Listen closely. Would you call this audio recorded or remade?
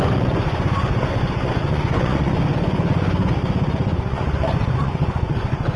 remade